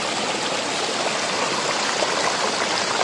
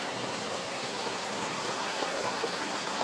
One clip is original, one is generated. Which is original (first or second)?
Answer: first